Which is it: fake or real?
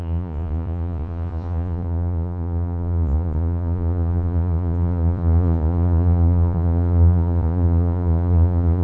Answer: fake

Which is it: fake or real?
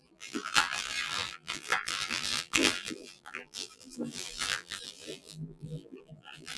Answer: fake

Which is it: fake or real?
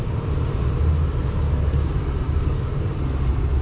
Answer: fake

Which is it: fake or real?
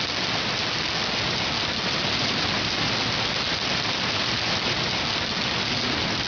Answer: real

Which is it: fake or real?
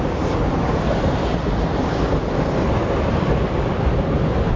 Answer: real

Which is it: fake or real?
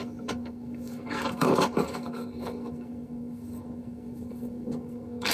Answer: fake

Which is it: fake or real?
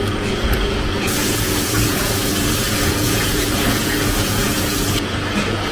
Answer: fake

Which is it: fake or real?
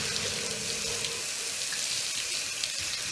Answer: real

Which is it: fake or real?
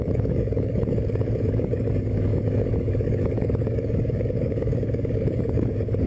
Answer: fake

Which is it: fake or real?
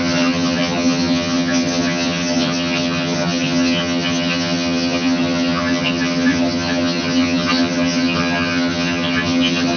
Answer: fake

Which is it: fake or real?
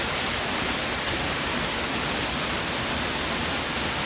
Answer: real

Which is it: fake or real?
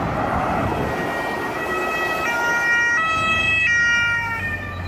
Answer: real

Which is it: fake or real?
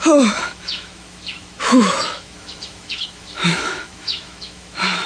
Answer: fake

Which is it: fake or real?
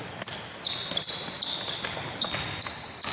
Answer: real